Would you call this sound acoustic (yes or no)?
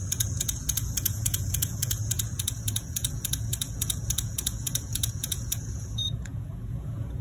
no